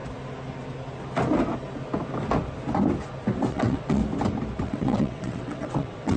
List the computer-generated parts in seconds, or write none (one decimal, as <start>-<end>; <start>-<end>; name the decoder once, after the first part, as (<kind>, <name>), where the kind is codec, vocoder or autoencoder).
3.5-4.0 (vocoder, WaveNeXt); 4.6-6.2